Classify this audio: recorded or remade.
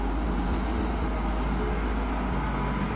recorded